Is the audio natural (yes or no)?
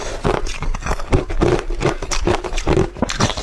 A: no